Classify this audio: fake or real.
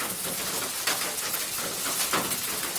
real